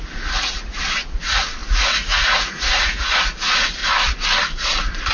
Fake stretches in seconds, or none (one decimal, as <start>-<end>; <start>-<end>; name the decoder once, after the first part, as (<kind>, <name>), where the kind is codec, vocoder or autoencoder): 0.0-3.8 (vocoder, Vocos)